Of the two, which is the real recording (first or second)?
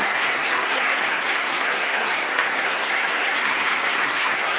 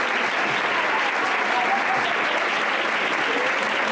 second